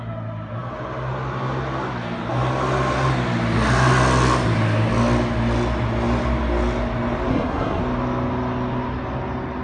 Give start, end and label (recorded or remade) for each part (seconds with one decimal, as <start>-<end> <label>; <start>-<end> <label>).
0.0-7.3 recorded; 7.3-7.8 remade; 7.8-9.6 recorded